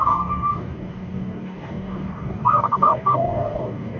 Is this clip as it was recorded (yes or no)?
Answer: no